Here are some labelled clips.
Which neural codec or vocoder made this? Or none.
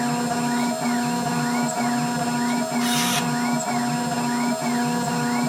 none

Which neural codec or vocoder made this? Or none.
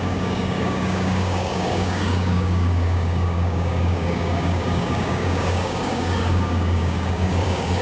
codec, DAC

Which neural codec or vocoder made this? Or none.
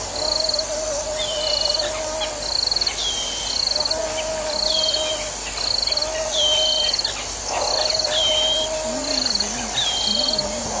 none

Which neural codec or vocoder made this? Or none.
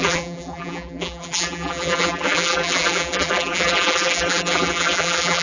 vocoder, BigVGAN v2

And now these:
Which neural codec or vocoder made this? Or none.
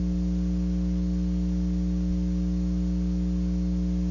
none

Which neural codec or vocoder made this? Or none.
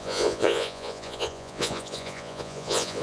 vocoder, Vocos